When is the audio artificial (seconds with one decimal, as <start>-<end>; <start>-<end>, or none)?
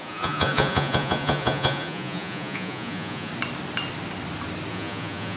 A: 0.0-3.3; 4.7-5.4